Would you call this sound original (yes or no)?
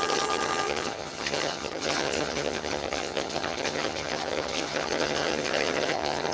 no